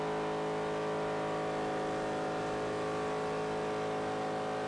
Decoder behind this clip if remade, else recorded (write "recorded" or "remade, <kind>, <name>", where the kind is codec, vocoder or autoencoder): recorded